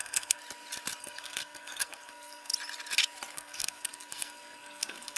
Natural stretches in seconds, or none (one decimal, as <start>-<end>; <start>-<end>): 0.4-1.0; 2.5-3.3